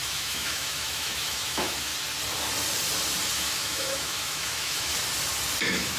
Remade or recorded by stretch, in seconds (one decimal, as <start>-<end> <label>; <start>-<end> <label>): 0.0-1.9 remade; 1.9-3.3 recorded; 3.3-4.9 remade; 4.9-5.6 recorded; 5.6-6.0 remade

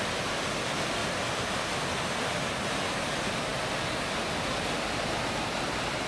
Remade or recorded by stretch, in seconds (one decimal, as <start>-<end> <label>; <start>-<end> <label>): 0.0-6.1 recorded

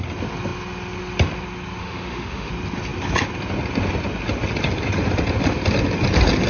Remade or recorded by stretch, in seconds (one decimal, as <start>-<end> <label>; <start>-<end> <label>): 0.0-1.8 recorded; 1.8-2.5 remade; 2.5-6.5 recorded

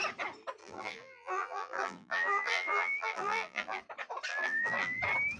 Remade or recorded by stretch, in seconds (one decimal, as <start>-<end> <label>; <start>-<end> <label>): 0.0-0.6 recorded; 0.6-3.8 remade; 3.8-4.3 recorded; 4.3-5.0 remade; 5.0-5.4 recorded

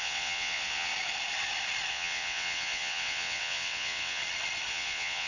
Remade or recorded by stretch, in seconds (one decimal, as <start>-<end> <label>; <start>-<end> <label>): 0.0-0.9 remade; 0.9-1.9 recorded; 1.9-4.2 remade; 4.2-4.7 recorded; 4.7-5.3 remade

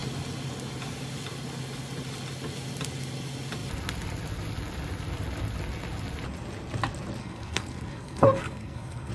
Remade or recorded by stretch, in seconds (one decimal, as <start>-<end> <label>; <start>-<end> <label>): 0.0-7.2 recorded; 7.2-9.1 remade